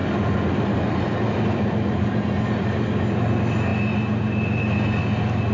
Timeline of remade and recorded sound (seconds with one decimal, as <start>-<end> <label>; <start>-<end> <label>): 0.0-5.5 recorded